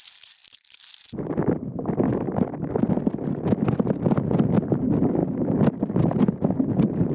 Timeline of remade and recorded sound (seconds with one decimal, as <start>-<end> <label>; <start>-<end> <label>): 0.0-0.4 remade; 0.4-4.7 recorded; 4.7-5.2 remade; 5.2-6.6 recorded; 6.6-7.1 remade